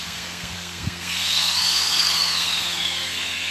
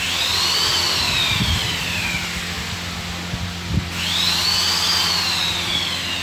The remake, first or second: first